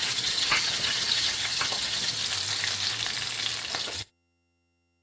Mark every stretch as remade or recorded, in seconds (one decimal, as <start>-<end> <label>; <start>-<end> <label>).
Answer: 0.0-2.2 remade; 2.2-3.8 recorded; 3.8-5.0 remade